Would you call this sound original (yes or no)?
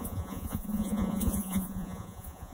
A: no